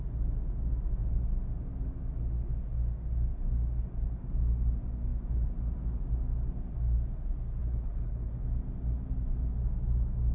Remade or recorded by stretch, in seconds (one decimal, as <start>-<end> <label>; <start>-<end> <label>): 0.0-7.6 recorded; 7.6-8.3 remade; 8.3-10.3 recorded